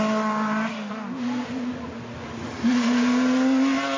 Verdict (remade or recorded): recorded